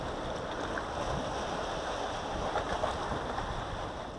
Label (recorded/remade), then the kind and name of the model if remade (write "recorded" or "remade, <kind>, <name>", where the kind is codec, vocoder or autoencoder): recorded